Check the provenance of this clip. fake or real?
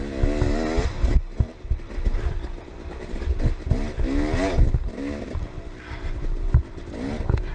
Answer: real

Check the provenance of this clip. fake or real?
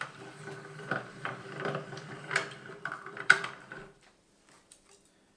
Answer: fake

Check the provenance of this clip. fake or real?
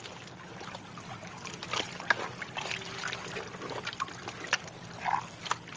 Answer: real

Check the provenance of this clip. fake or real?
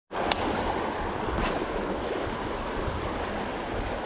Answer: real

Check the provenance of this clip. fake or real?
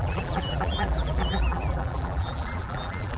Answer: fake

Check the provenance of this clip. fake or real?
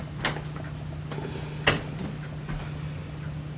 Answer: real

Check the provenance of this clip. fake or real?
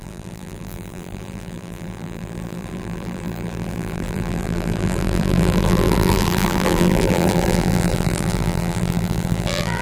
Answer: fake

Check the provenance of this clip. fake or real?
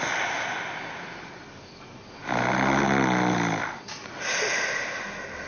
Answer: real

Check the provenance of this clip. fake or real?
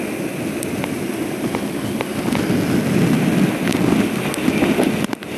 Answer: real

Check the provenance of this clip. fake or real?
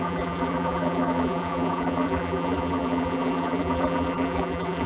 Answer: fake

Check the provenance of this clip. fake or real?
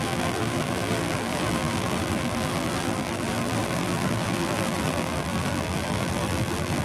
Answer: fake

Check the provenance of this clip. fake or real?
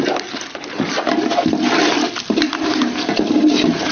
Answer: real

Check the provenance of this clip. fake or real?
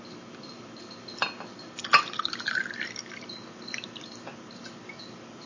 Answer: real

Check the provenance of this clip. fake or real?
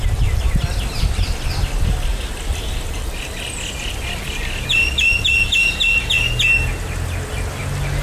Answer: real